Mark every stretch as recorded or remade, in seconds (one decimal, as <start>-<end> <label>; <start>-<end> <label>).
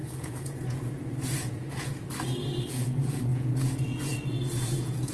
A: 0.0-1.9 remade; 1.9-2.7 recorded; 2.7-5.1 remade